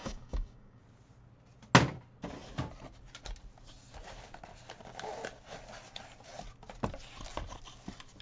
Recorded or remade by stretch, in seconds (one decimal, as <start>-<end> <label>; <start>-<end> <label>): 0.0-0.8 remade; 0.8-8.2 recorded

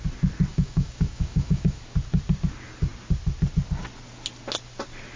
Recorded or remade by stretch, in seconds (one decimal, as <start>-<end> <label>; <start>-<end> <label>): 0.0-0.5 recorded; 0.5-1.8 remade; 1.8-5.2 recorded